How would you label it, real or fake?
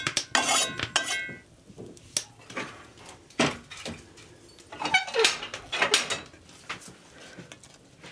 real